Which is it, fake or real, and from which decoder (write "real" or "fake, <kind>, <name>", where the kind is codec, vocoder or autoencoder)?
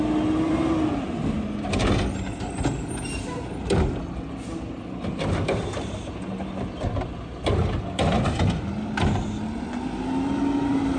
real